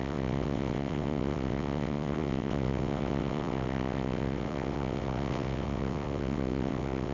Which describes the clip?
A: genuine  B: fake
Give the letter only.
B